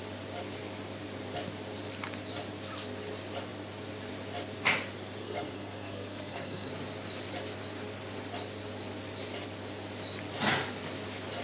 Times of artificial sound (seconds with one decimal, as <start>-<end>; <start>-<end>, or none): 5.2-6.7